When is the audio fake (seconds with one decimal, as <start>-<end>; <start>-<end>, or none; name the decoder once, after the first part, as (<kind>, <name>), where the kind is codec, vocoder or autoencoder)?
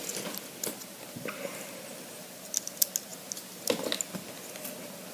none